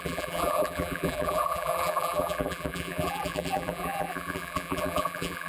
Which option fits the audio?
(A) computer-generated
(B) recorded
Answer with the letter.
A